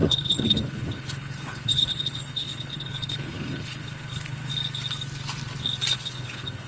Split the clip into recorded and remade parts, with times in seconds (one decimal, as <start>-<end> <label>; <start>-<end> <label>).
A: 0.0-4.5 remade; 4.5-5.9 recorded; 5.9-6.7 remade